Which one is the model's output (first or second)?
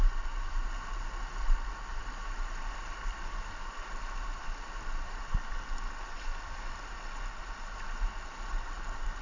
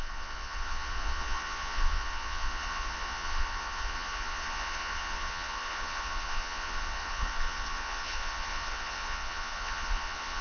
second